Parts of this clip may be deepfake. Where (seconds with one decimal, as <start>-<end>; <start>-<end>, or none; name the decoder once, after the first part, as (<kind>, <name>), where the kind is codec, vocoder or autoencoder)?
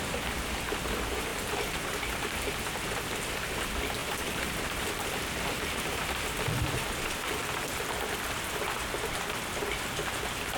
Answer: 4.0-7.4 (vocoder, BigVGAN v2)